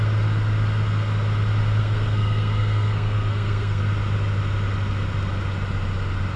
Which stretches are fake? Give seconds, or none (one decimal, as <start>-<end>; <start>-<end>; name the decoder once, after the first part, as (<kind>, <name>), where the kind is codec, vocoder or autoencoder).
1.8-3.8 (codec, SNAC)